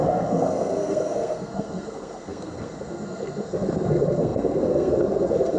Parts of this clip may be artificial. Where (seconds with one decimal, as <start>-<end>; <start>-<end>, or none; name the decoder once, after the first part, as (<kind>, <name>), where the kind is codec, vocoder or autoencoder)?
0.0-5.6 (codec, SNAC)